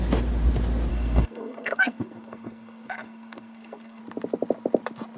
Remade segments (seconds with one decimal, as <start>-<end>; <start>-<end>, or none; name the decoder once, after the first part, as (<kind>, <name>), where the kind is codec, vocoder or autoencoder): 0.9-4.0 (codec, SNAC)